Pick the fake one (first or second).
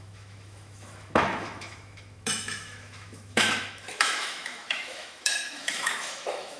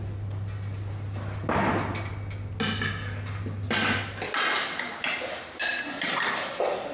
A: first